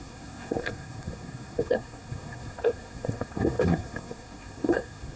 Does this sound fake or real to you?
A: fake